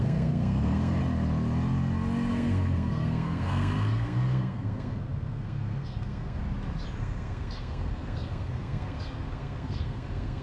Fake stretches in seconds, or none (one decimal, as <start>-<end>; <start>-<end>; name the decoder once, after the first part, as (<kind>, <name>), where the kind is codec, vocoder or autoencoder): 0.0-1.0 (codec, SNAC); 2.3-6.4; 7.0-10.4